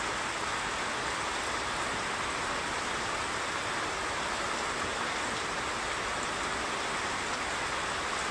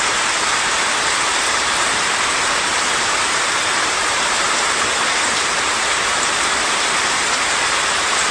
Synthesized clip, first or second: second